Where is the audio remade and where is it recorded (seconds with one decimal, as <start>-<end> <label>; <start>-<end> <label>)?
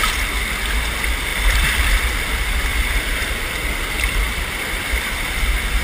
0.0-1.3 recorded; 1.3-1.9 remade; 1.9-2.7 recorded; 2.7-5.3 remade; 5.3-5.8 recorded